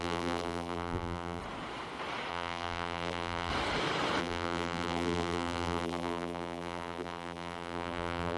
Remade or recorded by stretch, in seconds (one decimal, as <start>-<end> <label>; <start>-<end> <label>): 0.0-1.4 remade; 1.4-2.3 recorded; 2.3-3.5 remade; 3.5-4.2 recorded; 4.2-8.4 remade